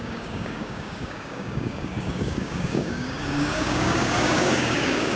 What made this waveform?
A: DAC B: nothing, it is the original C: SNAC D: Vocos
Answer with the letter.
A